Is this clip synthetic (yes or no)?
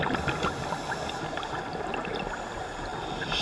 no